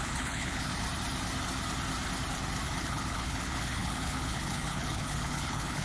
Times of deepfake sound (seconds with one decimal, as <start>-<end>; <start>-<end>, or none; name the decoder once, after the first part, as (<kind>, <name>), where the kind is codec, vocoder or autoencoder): 0.0-0.7 (codec, HILCodec); 2.8-5.8